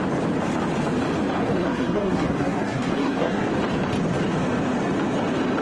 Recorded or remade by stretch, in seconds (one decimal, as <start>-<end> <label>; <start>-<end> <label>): 0.0-1.4 recorded; 1.4-3.5 remade; 3.5-5.6 recorded